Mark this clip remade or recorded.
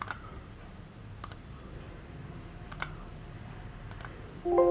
recorded